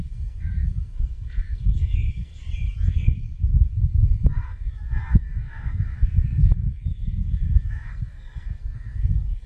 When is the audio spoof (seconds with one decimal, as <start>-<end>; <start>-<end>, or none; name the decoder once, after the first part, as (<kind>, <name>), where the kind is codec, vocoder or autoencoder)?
0.0-2.3 (codec, SNAC); 2.9-9.5